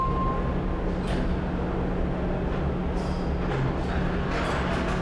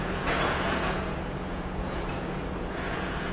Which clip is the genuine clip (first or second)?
first